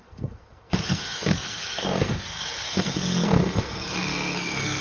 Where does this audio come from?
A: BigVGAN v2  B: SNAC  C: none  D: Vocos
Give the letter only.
B